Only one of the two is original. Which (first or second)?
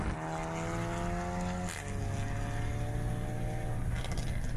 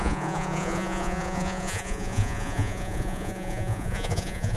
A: first